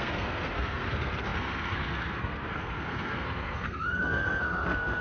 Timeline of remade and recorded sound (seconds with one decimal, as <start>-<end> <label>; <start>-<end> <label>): 0.0-5.0 remade